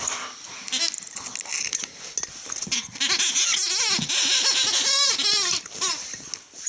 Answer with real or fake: real